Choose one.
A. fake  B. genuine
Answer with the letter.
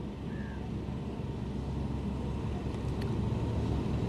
B